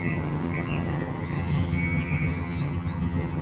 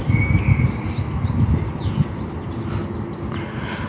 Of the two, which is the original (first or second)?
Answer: second